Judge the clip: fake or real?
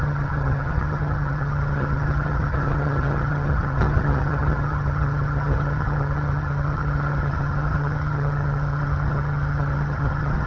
fake